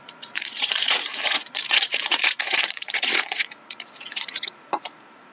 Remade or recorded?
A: remade